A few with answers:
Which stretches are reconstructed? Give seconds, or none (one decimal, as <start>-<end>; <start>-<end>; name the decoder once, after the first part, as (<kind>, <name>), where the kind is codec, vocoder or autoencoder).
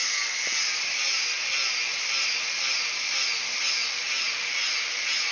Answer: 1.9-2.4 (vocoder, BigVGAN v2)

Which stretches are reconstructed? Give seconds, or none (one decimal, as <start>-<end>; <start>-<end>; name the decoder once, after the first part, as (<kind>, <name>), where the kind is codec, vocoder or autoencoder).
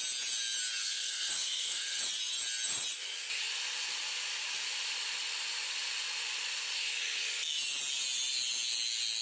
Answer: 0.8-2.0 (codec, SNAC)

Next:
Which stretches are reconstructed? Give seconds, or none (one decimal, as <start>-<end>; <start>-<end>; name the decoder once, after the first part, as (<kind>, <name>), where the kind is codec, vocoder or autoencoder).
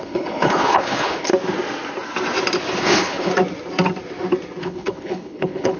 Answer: 0.0-1.3 (codec, HILCodec); 2.8-3.3; 4.6-5.8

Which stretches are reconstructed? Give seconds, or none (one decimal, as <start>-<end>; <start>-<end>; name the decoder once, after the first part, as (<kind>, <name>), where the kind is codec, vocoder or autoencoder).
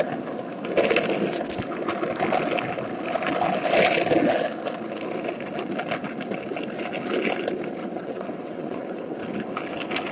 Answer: 7.8-9.2 (vocoder, WaveNeXt)